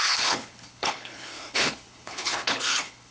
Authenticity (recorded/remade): remade